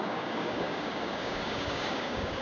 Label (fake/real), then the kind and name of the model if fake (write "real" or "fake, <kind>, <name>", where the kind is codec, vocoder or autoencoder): fake, codec, DAC